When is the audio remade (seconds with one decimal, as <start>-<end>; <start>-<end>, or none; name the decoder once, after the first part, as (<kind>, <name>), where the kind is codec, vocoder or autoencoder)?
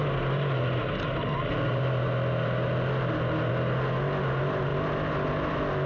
none